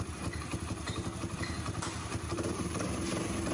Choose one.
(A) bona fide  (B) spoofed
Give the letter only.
B